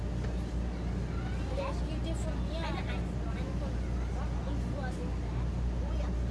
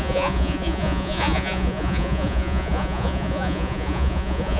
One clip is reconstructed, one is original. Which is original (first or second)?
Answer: first